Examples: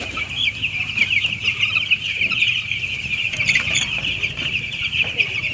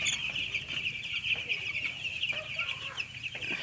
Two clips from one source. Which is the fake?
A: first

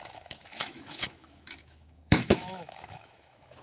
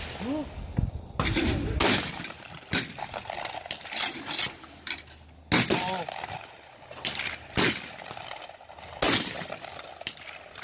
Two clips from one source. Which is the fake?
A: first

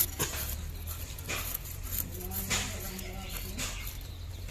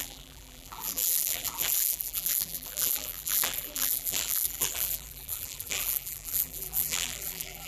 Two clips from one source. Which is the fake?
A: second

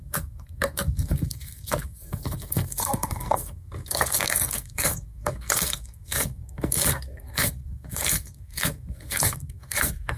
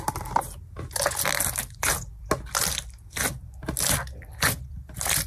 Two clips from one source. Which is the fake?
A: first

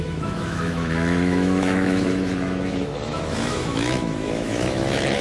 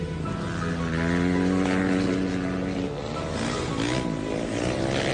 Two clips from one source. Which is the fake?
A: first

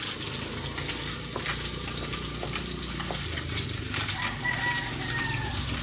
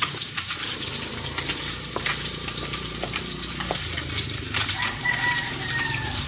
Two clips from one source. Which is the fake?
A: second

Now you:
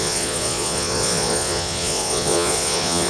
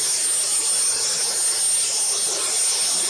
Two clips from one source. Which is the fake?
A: first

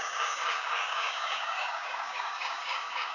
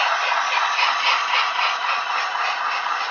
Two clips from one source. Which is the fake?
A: first